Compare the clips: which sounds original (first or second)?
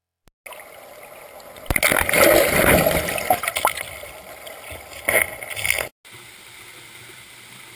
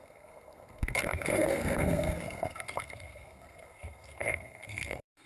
first